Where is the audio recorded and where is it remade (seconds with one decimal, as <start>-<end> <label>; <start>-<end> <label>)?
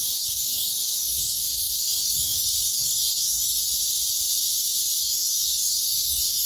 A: 0.0-3.6 remade; 3.6-5.0 recorded; 5.0-6.5 remade